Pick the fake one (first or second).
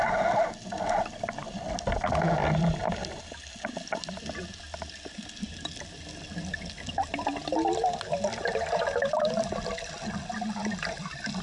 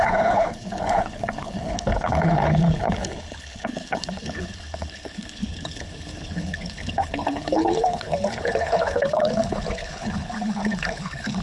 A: second